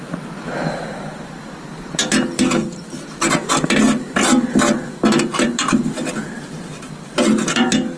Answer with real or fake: real